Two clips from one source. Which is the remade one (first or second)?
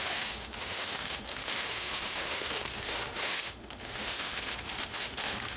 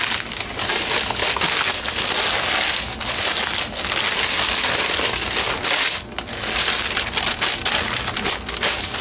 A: first